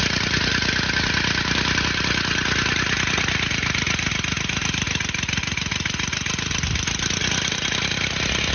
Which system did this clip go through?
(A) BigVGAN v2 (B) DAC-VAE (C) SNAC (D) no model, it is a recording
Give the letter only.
D